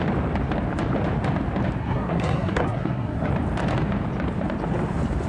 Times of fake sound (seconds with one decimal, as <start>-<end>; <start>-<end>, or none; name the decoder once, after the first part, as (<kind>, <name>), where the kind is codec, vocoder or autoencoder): 1.8-3.3 (codec, SNAC)